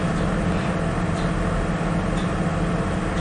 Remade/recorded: recorded